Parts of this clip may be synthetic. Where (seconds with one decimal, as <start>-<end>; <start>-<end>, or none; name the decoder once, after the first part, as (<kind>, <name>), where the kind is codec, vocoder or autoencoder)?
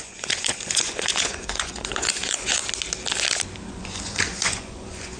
0.0-2.6 (vocoder, Vocos); 3.7-5.2